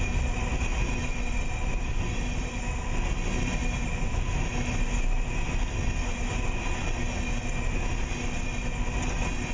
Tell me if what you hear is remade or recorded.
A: recorded